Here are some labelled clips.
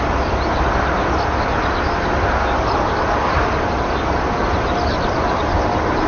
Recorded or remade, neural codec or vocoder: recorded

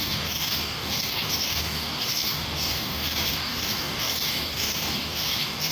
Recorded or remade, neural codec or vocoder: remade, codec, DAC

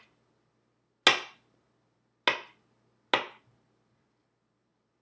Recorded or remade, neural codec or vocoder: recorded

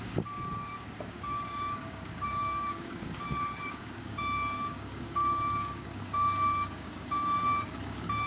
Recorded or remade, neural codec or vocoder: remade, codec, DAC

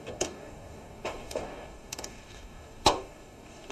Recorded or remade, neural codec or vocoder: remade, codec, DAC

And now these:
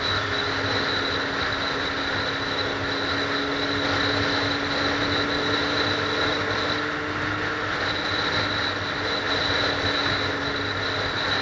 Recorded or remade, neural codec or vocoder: recorded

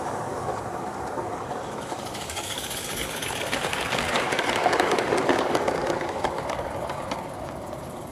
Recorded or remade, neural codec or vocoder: remade, codec, DAC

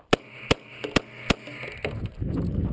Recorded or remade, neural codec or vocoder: recorded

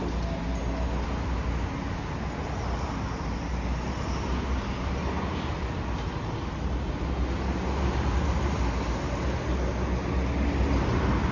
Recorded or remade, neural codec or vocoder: recorded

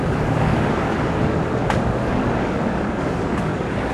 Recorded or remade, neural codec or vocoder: remade, codec, DAC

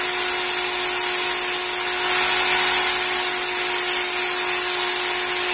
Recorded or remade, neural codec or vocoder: recorded